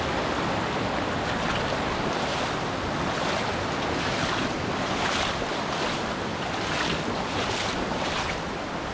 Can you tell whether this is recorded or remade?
recorded